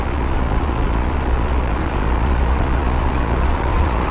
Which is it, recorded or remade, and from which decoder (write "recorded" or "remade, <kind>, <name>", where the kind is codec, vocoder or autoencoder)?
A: remade, vocoder, Vocos